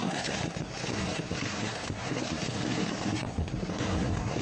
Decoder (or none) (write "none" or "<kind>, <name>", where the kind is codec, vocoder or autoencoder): codec, SNAC